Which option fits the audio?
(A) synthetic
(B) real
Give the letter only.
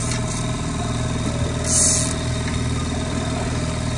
B